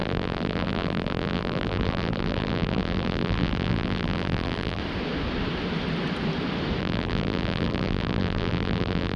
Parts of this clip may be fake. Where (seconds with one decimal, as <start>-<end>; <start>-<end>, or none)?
0.0-4.8; 6.8-9.2